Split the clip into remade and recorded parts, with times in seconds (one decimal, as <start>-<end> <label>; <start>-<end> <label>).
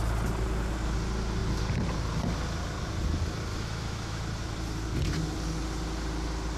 0.0-3.5 recorded; 3.5-4.2 remade; 4.2-6.6 recorded